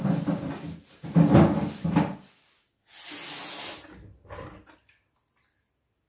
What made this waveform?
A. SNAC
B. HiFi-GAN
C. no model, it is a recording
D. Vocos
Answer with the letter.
C